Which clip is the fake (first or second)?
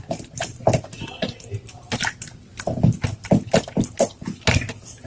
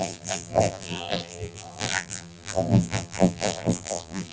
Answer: second